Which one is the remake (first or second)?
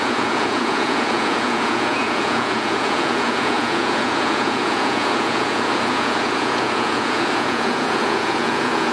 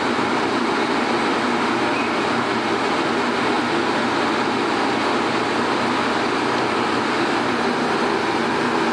first